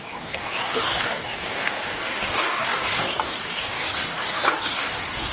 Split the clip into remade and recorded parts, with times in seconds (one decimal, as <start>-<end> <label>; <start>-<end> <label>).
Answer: 0.0-5.3 remade